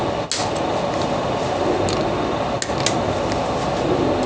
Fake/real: real